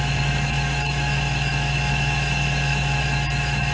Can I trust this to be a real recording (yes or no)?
no